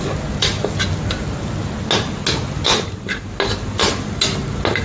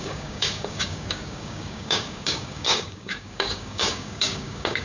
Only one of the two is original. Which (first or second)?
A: first